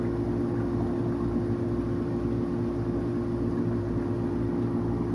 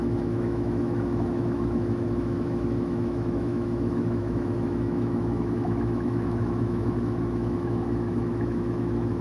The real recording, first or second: first